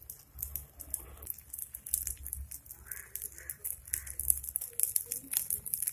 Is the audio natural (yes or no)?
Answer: yes